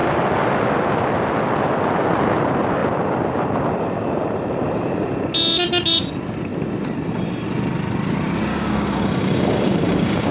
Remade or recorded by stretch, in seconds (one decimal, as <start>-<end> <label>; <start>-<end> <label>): 0.0-8.5 recorded; 8.5-10.3 remade